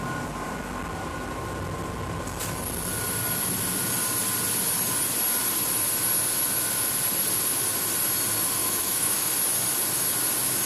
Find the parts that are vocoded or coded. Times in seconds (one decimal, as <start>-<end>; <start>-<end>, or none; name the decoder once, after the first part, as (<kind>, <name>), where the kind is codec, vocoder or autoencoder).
8.6-9.3 (autoencoder, DAC-VAE)